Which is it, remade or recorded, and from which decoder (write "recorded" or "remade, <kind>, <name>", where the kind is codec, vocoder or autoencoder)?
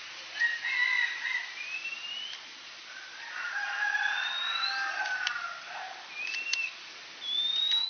recorded